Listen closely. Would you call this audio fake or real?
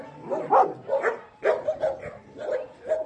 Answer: real